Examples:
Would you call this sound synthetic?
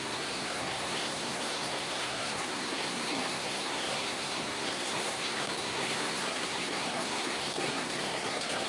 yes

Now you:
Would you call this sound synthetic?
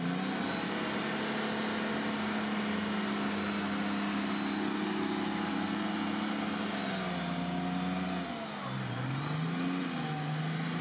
no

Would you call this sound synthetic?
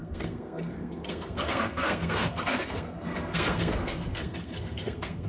yes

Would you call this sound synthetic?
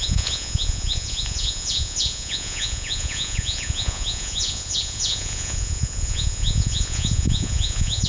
yes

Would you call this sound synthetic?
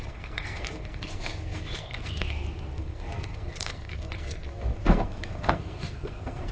yes